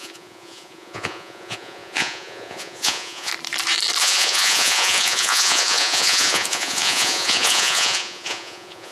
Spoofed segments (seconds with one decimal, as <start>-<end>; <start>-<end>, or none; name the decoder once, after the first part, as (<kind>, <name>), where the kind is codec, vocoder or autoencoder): 0.0-3.3 (vocoder, Vocos); 4.0-8.9